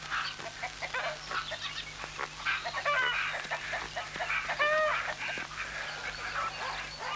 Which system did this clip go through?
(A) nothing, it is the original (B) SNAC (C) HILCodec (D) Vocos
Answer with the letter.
A